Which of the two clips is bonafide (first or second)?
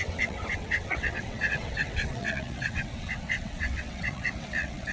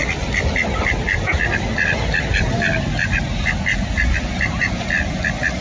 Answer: second